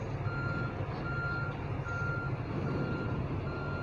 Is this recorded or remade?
recorded